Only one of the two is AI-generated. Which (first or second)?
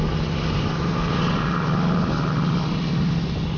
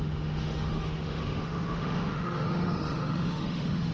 second